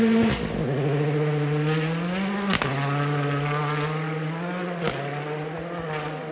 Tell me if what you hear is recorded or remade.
recorded